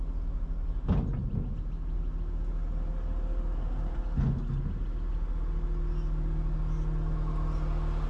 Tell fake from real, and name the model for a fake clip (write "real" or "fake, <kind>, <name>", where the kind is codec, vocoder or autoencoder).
real